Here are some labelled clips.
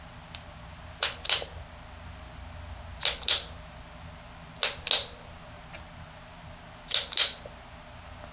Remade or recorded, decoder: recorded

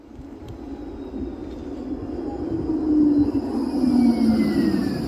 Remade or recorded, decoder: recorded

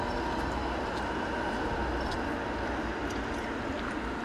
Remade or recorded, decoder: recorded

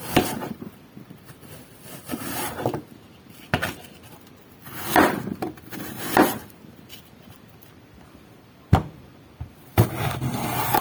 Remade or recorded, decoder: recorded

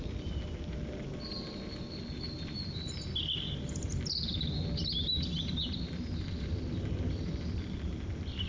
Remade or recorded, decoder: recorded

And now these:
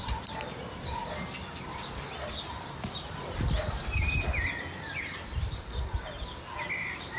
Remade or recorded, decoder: recorded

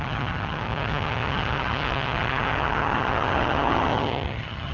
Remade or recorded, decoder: remade, vocoder, HiFi-GAN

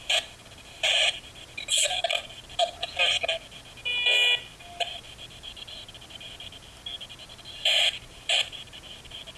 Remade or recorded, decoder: recorded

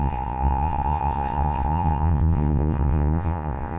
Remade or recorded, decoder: remade, vocoder, Vocos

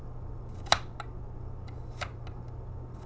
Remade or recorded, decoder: recorded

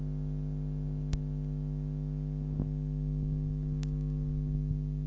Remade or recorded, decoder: recorded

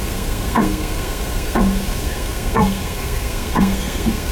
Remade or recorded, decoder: remade, codec, SNAC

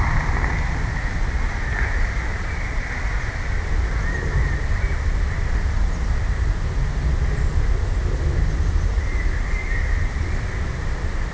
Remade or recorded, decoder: recorded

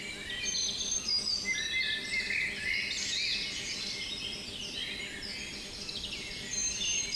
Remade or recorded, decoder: recorded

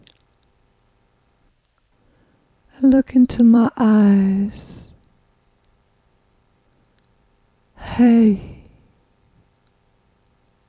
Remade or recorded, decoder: remade, vocoder, BigVGAN v2